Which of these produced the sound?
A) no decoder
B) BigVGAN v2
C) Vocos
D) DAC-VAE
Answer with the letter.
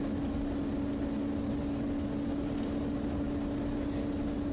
A